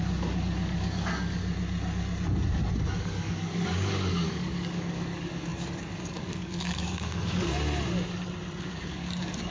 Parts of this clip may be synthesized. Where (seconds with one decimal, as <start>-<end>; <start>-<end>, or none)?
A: 0.0-1.4; 3.0-7.5; 8.6-9.5